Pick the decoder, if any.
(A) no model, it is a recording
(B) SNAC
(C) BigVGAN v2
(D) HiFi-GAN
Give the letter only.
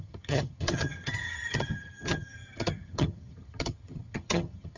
D